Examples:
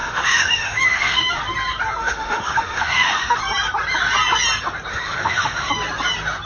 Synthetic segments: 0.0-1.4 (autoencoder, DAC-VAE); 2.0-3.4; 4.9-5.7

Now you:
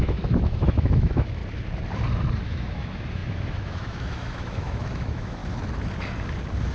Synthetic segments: 0.0-1.4 (autoencoder, DAC-VAE); 2.4-5.4

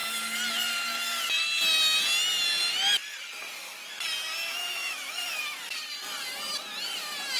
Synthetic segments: 4.6-5.4 (autoencoder, DAC-VAE)

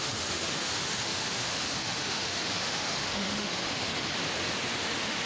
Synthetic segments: 0.0-3.9 (autoencoder, DAC-VAE); 4.7-5.3

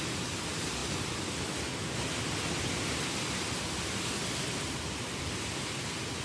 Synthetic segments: none

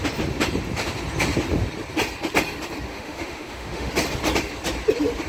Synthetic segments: 2.9-3.9 (autoencoder, DAC-VAE)